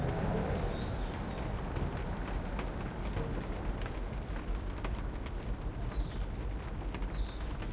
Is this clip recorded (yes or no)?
yes